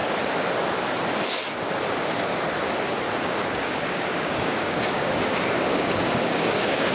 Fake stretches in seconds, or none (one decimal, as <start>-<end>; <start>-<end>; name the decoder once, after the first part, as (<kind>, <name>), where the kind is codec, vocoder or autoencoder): 3.4-6.9 (codec, DAC)